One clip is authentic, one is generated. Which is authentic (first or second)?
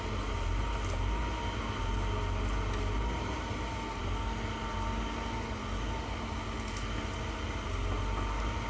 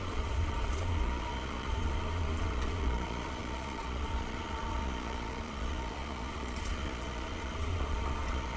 first